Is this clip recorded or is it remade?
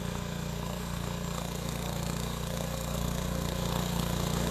remade